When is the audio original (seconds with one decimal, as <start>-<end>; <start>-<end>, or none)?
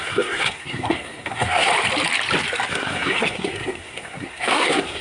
1.7-2.7